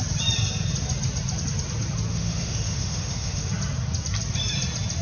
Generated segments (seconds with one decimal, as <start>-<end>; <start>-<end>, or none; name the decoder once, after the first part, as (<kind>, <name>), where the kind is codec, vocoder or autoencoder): 2.1-3.5 (autoencoder, DAC-VAE)